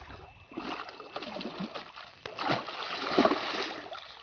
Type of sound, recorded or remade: recorded